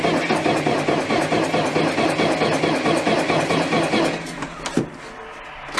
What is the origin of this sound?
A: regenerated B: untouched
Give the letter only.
B